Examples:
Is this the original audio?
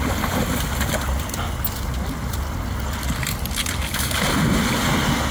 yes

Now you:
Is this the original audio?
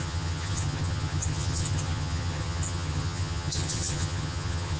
no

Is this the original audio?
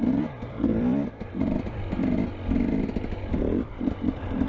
no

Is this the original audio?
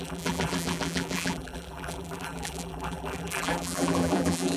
no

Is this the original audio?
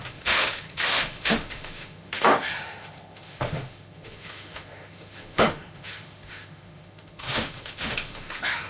no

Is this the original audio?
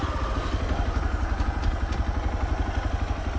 yes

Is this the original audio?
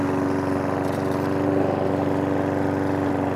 yes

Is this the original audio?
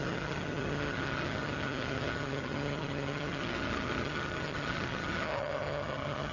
no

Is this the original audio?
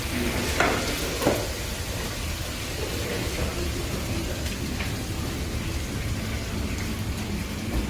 yes